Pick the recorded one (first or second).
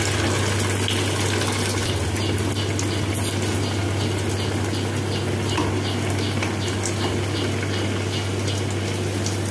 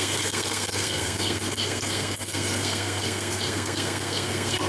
first